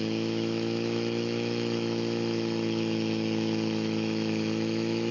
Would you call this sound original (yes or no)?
no